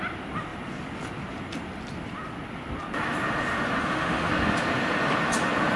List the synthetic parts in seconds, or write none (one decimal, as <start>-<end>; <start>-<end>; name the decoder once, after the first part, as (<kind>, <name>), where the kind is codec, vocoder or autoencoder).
3.8-4.3 (autoencoder, DAC-VAE)